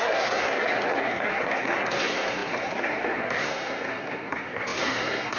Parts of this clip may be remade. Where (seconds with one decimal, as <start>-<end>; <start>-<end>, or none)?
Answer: 0.0-5.4